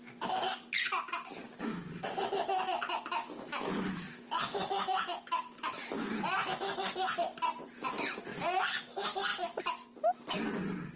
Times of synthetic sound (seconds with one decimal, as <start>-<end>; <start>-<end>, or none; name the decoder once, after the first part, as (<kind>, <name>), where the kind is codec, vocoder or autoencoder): 1.4-6.2 (autoencoder, DAC-VAE)